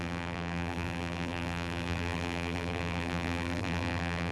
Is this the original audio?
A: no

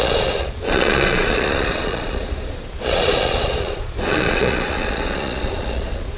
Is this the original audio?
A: no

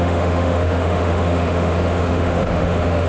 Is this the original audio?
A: no